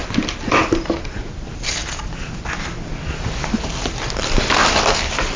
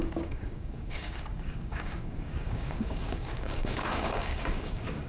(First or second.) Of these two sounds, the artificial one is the second